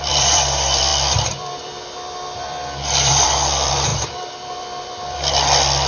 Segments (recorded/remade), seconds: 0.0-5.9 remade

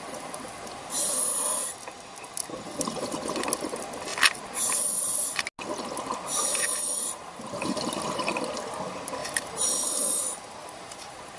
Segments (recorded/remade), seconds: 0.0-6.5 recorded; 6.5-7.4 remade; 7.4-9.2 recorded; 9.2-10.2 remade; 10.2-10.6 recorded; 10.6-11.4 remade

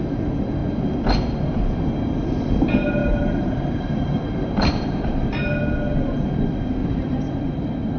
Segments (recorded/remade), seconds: 0.0-3.0 recorded; 3.0-5.1 remade; 5.1-6.8 recorded; 6.8-7.5 remade; 7.5-8.0 recorded